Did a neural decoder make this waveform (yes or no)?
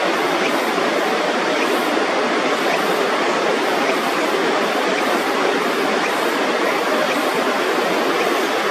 no